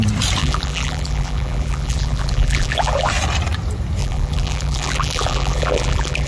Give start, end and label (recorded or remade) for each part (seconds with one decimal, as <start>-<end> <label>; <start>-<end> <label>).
0.0-0.4 recorded; 0.4-3.1 remade; 3.1-4.0 recorded; 4.0-6.3 remade